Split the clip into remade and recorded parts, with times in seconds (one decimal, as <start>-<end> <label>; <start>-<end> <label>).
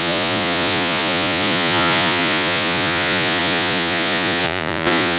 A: 0.0-5.2 remade